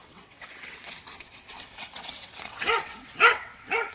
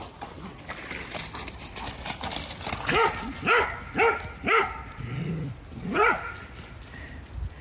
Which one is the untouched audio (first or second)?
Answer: second